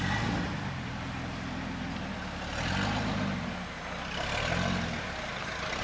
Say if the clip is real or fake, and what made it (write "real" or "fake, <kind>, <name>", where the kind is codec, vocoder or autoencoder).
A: real